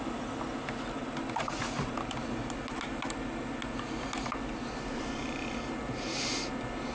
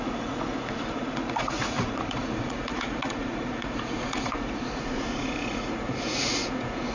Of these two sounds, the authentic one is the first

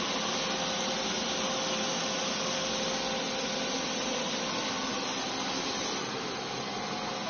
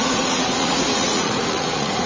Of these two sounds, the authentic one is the first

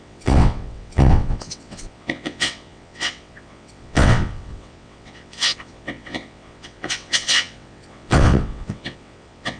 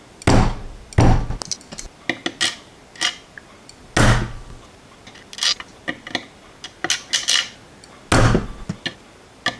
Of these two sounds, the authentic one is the second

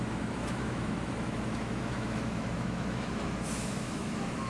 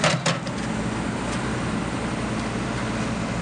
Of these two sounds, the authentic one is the second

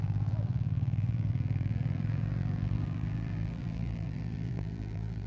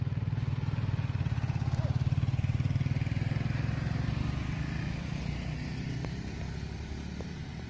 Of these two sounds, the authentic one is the second